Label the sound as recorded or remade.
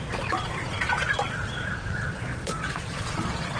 remade